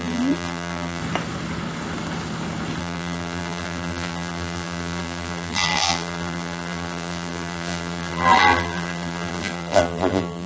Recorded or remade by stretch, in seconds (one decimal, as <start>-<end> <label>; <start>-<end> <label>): 0.0-1.0 remade; 1.0-2.8 recorded; 2.8-10.5 remade